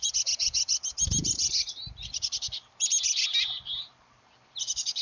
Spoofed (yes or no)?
no